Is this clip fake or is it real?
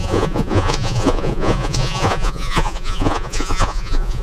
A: fake